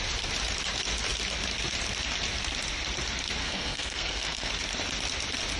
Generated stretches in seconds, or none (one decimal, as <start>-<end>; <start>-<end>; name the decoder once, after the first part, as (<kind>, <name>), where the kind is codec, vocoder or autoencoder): 3.4-4.5 (codec, SNAC)